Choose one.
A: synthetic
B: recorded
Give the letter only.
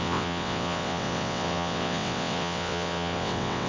A